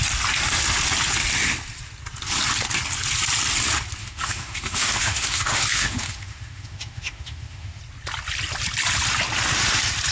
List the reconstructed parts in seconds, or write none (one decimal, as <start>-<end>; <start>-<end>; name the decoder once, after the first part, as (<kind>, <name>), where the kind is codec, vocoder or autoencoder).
4.0-7.8 (autoencoder, DAC-VAE)